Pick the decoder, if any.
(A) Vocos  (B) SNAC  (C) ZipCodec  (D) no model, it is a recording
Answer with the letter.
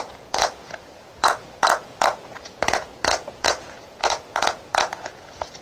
A